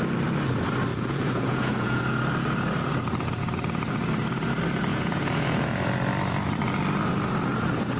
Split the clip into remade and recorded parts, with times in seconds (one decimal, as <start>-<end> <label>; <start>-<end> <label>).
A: 0.0-0.9 recorded; 0.9-2.0 remade; 2.0-4.9 recorded; 4.9-5.9 remade; 5.9-8.0 recorded